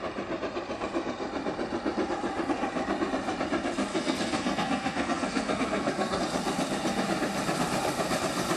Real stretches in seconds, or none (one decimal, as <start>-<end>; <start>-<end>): 0.0-3.9; 6.2-8.6